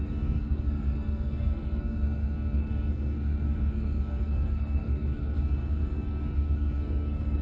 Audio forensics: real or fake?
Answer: fake